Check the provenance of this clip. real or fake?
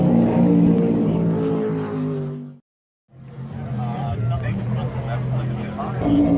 real